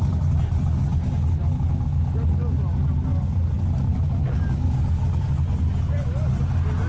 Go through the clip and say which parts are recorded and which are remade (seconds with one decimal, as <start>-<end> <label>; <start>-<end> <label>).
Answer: 0.0-6.9 recorded